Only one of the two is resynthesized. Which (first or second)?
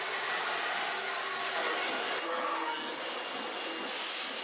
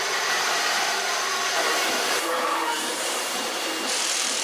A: second